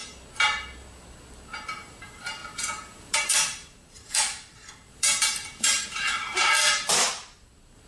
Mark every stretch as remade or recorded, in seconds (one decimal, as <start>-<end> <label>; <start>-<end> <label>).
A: 0.0-1.7 recorded; 1.7-7.9 remade

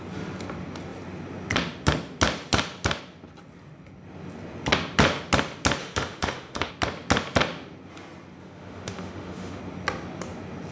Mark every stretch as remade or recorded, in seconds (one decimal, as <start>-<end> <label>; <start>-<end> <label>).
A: 0.0-5.8 recorded; 5.8-6.7 remade; 6.7-8.4 recorded; 8.4-9.6 remade; 9.6-10.7 recorded

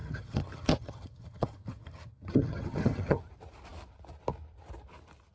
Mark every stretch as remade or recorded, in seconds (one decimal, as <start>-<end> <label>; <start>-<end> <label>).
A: 0.0-3.2 remade; 3.2-5.3 recorded

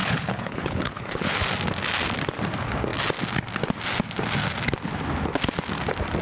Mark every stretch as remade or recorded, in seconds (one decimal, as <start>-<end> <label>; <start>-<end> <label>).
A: 0.0-1.4 remade; 1.4-6.2 recorded

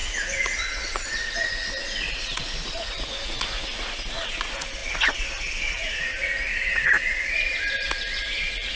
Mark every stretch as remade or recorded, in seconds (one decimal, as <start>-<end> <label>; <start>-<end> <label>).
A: 0.0-8.8 remade

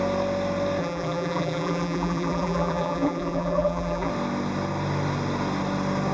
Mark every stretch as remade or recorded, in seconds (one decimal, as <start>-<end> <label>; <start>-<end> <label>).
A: 0.0-0.8 recorded; 0.8-4.1 remade; 4.1-6.1 recorded